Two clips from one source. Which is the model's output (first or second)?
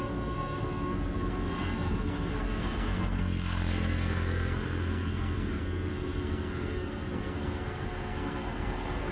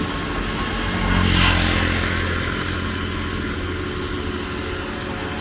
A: first